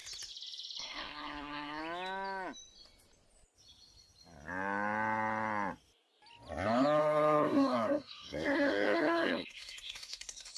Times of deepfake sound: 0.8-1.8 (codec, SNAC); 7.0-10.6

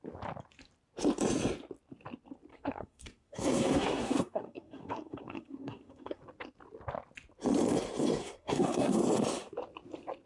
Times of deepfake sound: 2.5-6.2 (codec, SNAC); 8.2-9.0

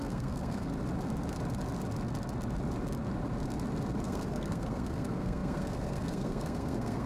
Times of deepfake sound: 0.0-0.7 (codec, SNAC); 4.0-7.1

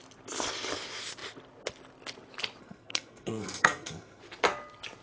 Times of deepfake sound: 2.6-4.2 (codec, SNAC)